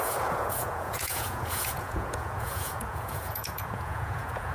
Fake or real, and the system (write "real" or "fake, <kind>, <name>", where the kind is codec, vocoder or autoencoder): fake, vocoder, Vocos